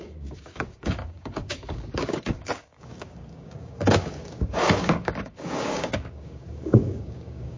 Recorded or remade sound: remade